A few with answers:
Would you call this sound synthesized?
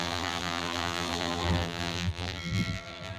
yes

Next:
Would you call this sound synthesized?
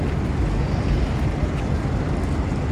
no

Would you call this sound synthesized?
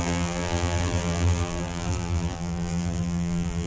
yes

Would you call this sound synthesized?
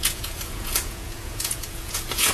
yes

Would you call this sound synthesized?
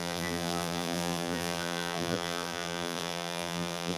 yes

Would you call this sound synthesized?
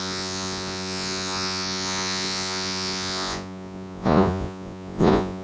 yes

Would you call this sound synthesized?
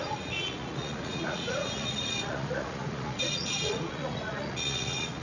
yes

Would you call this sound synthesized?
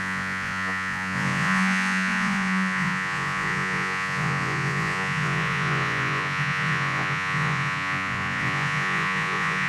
yes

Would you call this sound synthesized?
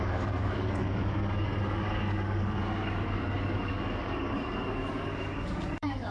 yes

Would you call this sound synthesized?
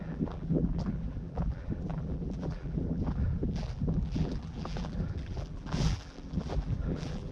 yes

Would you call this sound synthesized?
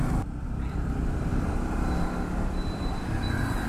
yes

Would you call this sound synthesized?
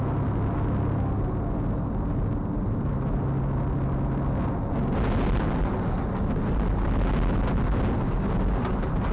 no